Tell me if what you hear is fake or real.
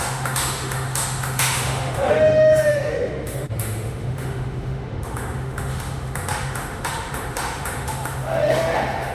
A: fake